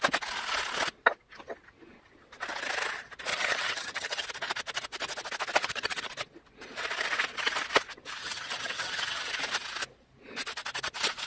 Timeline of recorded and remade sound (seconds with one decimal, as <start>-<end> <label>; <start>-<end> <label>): 0.0-3.3 recorded; 3.3-4.2 remade; 4.2-5.6 recorded; 5.6-6.1 remade; 6.1-8.2 recorded; 8.2-9.3 remade; 9.3-11.3 recorded